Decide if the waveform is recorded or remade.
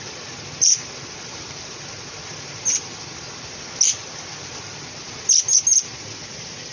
recorded